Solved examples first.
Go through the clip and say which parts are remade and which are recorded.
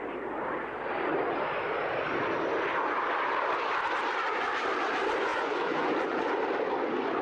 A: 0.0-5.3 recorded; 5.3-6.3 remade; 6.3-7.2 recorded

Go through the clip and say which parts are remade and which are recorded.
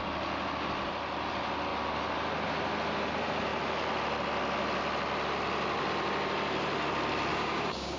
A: 0.0-7.3 recorded; 7.3-8.0 remade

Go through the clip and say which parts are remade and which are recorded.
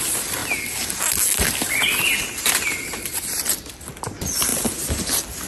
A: 0.0-5.5 recorded